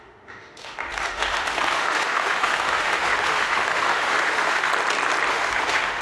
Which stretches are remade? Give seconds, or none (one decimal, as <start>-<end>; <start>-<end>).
0.0-4.7; 5.3-6.0